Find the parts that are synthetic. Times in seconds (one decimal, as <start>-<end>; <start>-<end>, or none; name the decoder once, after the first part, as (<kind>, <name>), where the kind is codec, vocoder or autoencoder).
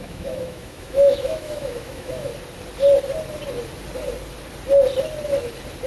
0.0-2.3 (autoencoder, DAC-VAE)